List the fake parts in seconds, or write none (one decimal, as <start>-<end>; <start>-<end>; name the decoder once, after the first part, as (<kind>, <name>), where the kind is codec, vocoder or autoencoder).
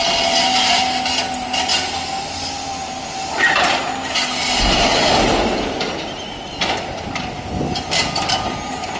none